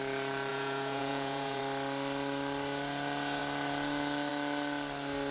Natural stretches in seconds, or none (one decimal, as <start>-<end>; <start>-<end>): 0.0-0.5; 1.6-5.3